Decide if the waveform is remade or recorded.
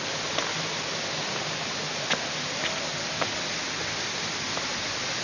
recorded